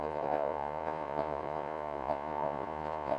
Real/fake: fake